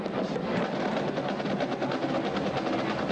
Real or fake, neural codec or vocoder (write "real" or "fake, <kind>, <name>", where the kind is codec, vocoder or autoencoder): real